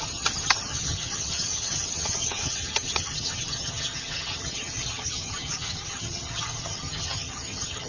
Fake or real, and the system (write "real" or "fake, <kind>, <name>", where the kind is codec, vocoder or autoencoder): fake, vocoder, HiFi-GAN